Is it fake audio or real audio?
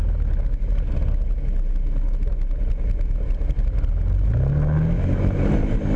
real